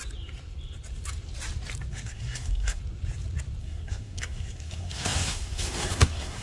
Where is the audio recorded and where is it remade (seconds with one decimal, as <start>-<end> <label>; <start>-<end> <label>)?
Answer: 0.0-1.9 recorded; 1.9-2.8 remade; 2.8-3.6 recorded; 3.6-6.4 remade

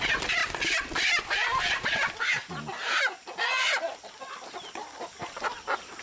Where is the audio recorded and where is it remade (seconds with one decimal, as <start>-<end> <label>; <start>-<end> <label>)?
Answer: 0.0-6.0 recorded

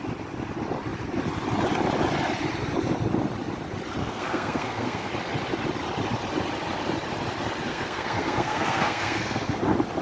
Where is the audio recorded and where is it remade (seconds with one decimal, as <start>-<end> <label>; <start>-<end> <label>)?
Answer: 0.0-4.0 recorded; 4.0-5.1 remade; 5.1-7.7 recorded; 7.7-9.6 remade; 9.6-10.0 recorded

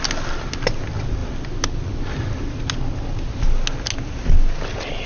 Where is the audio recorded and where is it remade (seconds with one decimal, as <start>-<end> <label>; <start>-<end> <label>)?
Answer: 0.0-5.1 recorded

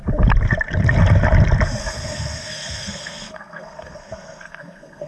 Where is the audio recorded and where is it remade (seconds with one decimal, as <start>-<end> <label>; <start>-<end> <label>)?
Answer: 0.0-1.8 recorded; 1.8-5.1 remade

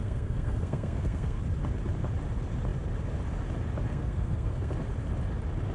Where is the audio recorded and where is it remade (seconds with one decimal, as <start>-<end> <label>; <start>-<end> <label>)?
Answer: 0.0-1.4 remade; 1.4-3.9 recorded; 3.9-4.7 remade; 4.7-5.7 recorded